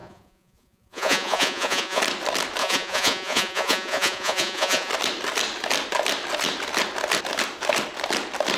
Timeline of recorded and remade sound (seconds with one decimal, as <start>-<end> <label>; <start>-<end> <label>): 0.0-2.0 remade; 2.0-2.6 recorded; 2.6-4.9 remade; 4.9-8.6 recorded